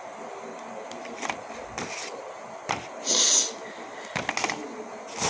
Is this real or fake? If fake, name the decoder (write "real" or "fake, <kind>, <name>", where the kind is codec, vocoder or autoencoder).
real